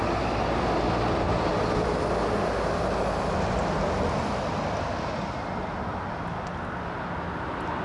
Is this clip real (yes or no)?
yes